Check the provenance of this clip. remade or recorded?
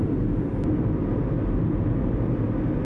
recorded